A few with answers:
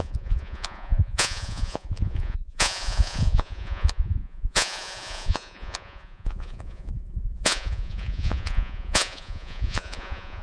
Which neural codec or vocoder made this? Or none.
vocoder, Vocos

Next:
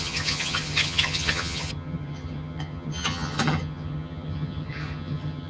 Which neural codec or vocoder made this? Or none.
vocoder, HiFi-GAN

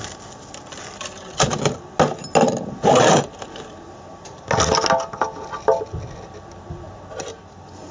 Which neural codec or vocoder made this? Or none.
none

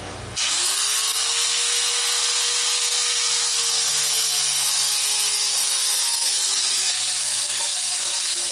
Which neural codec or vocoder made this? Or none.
codec, SNAC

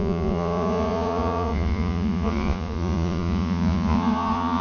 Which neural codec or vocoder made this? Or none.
vocoder, Vocos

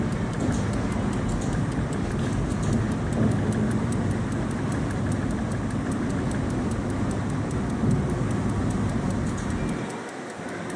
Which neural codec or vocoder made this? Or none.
none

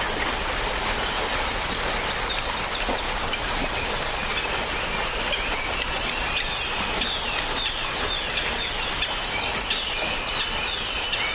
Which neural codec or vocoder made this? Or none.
none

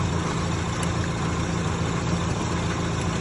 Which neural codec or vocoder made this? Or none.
none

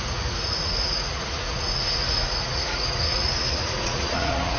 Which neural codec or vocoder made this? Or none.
vocoder, Vocos